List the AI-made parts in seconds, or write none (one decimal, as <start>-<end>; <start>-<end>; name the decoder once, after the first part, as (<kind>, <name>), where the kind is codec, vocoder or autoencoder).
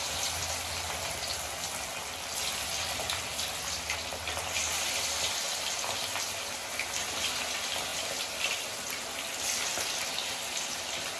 none